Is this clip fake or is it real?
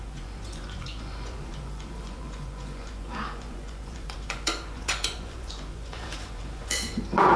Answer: fake